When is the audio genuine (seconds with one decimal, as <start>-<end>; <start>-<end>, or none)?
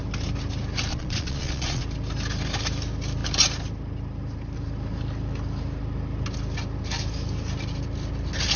0.0-0.9; 1.8-8.6